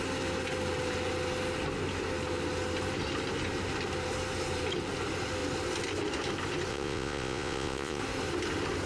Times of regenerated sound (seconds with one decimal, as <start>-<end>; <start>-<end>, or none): 6.7-8.0